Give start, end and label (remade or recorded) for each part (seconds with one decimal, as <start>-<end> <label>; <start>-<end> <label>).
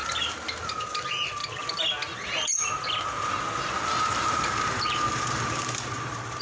0.0-1.4 remade; 1.4-4.0 recorded; 4.0-6.4 remade